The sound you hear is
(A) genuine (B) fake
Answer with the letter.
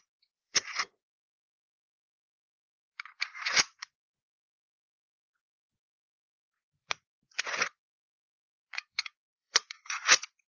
B